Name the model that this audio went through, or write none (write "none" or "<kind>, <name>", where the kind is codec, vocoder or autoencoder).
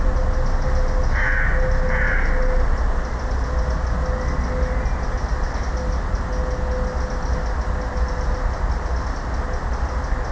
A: none